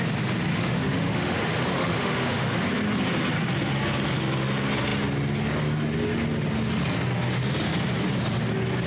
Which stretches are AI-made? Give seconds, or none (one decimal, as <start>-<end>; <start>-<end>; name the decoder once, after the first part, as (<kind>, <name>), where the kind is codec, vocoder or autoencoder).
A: 0.5-2.6 (autoencoder, DAC-VAE)